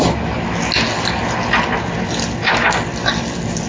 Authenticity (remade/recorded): recorded